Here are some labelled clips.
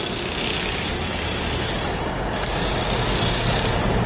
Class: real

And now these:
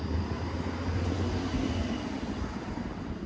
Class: real